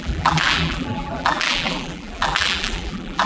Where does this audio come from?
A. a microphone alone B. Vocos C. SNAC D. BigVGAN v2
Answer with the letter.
D